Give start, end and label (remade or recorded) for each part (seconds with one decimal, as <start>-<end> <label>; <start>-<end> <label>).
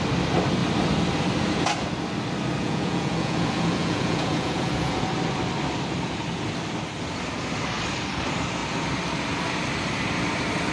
0.0-2.6 recorded; 2.6-5.1 remade; 5.1-10.7 recorded